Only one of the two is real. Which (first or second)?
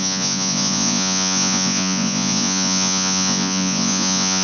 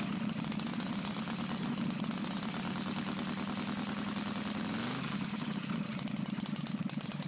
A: second